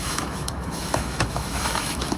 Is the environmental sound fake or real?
fake